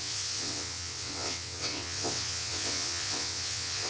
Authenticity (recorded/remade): remade